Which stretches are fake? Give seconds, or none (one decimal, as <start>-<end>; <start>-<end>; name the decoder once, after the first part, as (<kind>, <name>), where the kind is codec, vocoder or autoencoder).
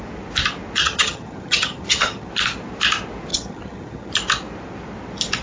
0.8-2.3 (vocoder, HiFi-GAN); 3.3-4.1